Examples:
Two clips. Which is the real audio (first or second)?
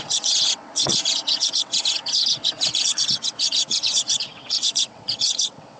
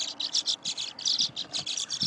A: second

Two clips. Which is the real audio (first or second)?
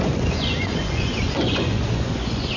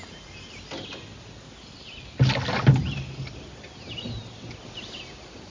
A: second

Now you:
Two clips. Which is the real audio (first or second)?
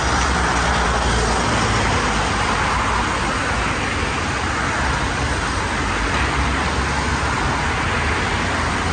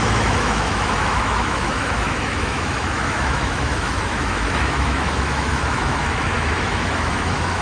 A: first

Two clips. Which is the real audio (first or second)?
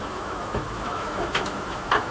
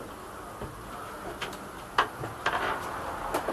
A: second